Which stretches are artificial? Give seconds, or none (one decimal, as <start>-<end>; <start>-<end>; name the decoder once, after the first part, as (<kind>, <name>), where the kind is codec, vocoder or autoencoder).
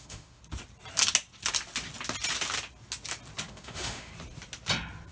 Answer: 0.0-0.4 (autoencoder, DAC-VAE); 3.5-4.1